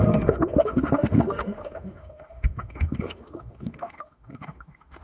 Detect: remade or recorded remade